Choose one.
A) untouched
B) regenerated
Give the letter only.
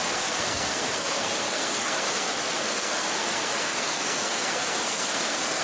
B